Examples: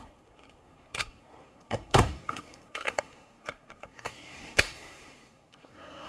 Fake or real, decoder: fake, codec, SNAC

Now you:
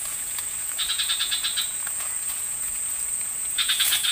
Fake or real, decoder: fake, vocoder, Vocos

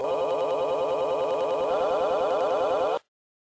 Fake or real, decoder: real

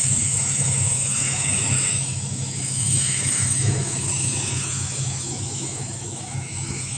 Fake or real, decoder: fake, autoencoder, DAC-VAE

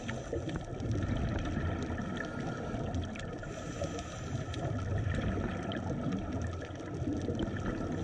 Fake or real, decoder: real